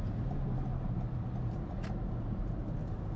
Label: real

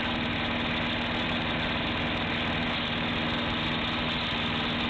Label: real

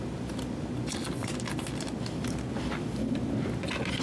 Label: real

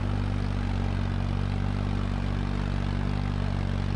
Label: real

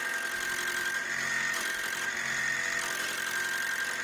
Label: real